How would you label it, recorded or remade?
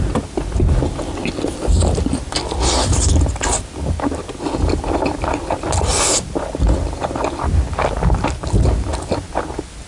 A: recorded